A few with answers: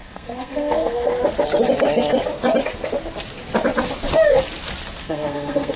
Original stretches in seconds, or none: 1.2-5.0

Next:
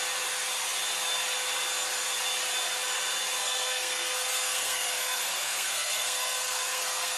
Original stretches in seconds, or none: 0.0-3.4

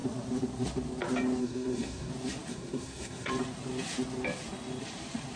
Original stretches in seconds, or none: 0.0-1.4; 2.1-2.5; 3.3-5.4

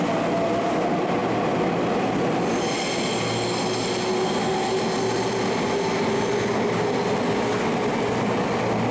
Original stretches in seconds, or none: 0.0-8.9